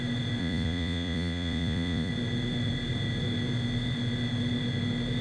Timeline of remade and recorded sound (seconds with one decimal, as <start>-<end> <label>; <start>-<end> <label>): 0.0-0.4 recorded; 0.4-2.1 remade; 2.1-5.2 recorded